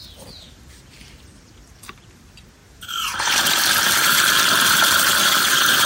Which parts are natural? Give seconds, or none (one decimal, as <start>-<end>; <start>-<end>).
0.0-5.9